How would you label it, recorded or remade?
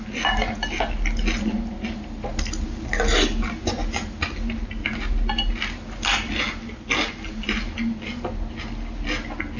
recorded